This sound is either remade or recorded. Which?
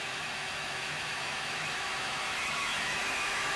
remade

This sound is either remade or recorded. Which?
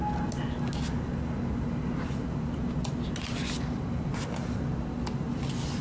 recorded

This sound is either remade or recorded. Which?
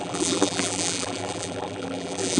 remade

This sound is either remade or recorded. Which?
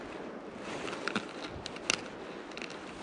recorded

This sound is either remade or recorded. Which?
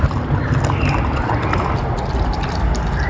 recorded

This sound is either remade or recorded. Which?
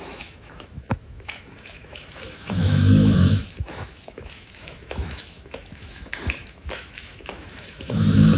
remade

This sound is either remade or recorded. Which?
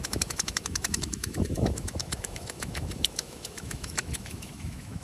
remade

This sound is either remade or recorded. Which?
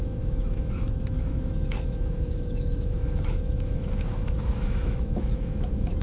remade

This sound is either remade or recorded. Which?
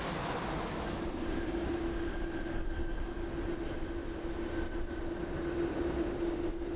recorded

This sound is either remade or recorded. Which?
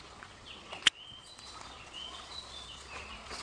remade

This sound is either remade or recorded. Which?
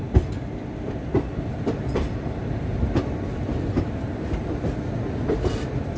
remade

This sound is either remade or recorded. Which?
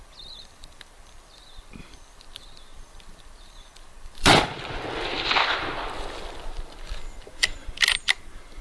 remade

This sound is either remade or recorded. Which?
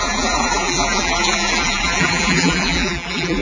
remade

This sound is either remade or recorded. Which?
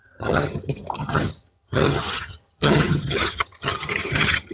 remade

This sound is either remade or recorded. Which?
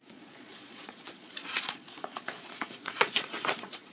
remade